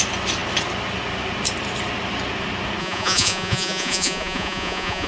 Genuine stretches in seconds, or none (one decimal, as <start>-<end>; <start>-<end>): 0.0-2.8